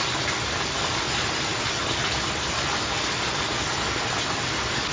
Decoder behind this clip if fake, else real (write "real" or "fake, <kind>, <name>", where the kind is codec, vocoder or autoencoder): real